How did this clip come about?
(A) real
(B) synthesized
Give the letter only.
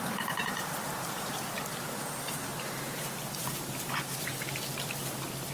B